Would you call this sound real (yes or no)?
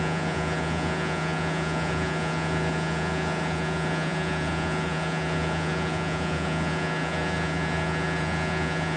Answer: no